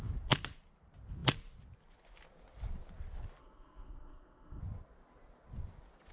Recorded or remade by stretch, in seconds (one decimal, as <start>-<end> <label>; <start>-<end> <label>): 0.0-3.4 recorded; 3.4-4.6 remade; 4.6-6.1 recorded